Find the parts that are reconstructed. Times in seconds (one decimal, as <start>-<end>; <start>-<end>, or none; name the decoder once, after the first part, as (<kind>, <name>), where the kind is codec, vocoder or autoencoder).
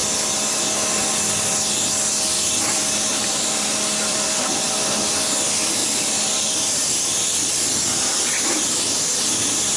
3.2-4.7 (vocoder, BigVGAN v2); 5.8-9.0